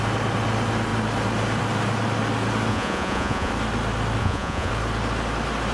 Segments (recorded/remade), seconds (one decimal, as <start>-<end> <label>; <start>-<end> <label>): 0.0-2.7 recorded; 2.7-3.5 remade; 3.5-4.2 recorded; 4.2-4.7 remade; 4.7-5.7 recorded